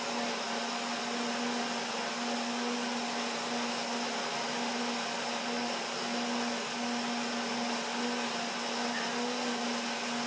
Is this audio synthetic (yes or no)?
no